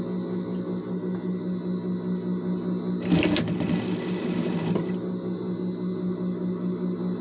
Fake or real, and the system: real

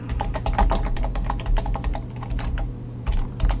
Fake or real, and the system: fake, vocoder, BigVGAN v2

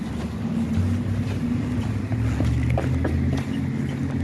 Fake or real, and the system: real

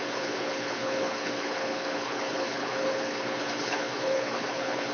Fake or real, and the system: fake, codec, HILCodec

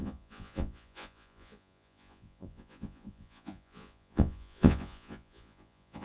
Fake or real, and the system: fake, vocoder, Vocos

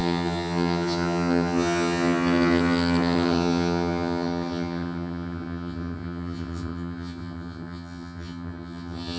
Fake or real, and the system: fake, vocoder, HiFi-GAN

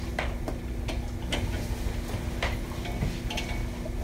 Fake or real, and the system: real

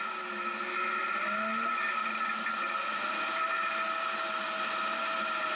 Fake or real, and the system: real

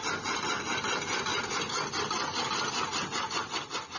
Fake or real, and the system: real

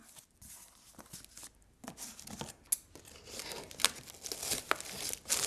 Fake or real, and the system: real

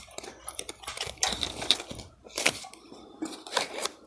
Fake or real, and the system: fake, vocoder, BigVGAN v2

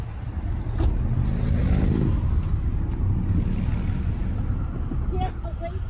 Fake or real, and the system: real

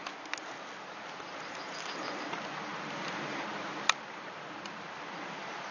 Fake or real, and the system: real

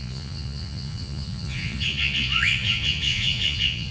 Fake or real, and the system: fake, vocoder, Vocos